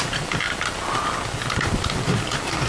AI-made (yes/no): no